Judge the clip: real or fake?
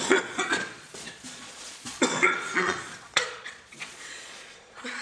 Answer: fake